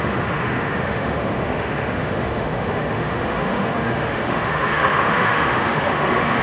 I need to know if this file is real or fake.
fake